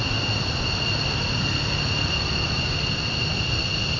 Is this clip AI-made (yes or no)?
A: no